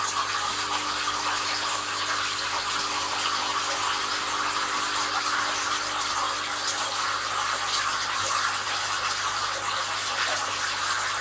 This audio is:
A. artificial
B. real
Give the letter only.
B